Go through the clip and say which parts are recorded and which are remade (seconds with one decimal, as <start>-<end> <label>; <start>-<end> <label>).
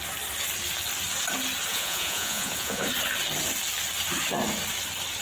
0.0-1.7 recorded; 1.7-2.9 remade; 2.9-5.2 recorded